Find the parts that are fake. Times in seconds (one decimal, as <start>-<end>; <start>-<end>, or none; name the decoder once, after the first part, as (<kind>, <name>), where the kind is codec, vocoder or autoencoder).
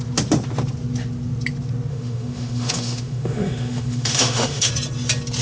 1.9-4.7 (autoencoder, DAC-VAE)